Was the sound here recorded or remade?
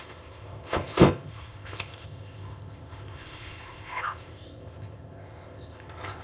remade